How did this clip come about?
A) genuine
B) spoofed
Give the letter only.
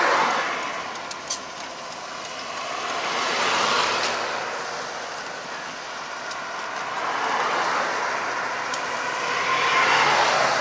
A